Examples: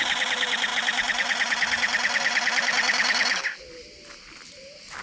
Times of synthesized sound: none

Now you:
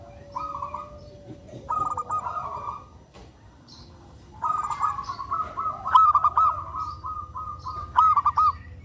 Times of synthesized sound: 0.7-2.7 (vocoder, BigVGAN v2); 3.2-5.2

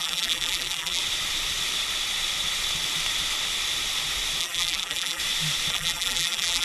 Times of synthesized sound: 0.0-1.0 (vocoder, BigVGAN v2); 4.4-5.2; 5.7-6.6

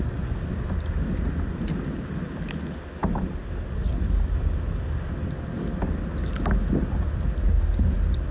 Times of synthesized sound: none

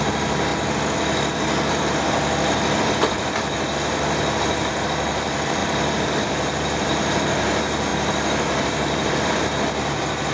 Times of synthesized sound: 0.0-0.5 (vocoder, BigVGAN v2); 3.1-10.3

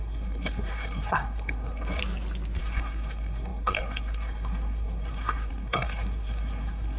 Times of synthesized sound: 0.0-2.0 (codec, SNAC); 2.6-7.0

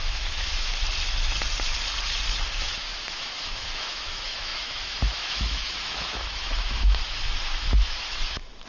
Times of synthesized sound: 0.0-0.7 (autoencoder, DAC-VAE); 2.5-8.7